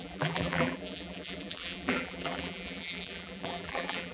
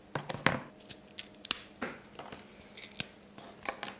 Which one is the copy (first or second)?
first